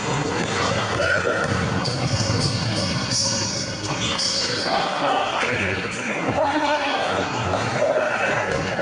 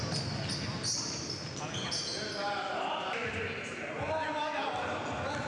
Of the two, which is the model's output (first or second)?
first